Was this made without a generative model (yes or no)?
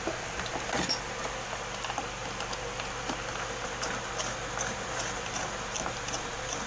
yes